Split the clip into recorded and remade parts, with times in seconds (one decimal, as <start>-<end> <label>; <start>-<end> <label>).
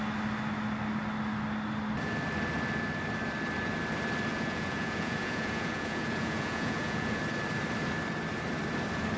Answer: 0.0-4.3 recorded; 4.3-7.2 remade; 7.2-9.2 recorded